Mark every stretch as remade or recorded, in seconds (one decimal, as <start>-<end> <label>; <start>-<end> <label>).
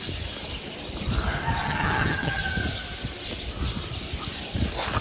0.0-1.6 recorded; 1.6-2.4 remade; 2.4-5.0 recorded